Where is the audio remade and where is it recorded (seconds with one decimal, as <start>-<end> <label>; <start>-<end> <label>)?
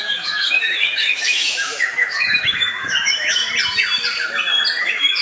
0.0-3.4 remade; 3.4-4.8 recorded; 4.8-5.2 remade